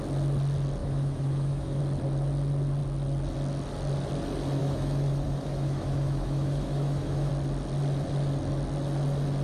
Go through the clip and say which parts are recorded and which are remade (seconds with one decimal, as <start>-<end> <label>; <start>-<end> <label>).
0.0-0.8 recorded; 0.8-1.8 remade; 1.8-4.6 recorded; 4.6-7.3 remade; 7.3-9.4 recorded